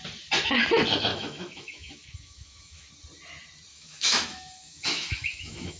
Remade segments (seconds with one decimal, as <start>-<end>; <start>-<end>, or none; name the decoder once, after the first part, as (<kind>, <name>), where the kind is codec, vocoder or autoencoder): 1.1-2.9 (autoencoder, DAC-VAE); 3.7-5.8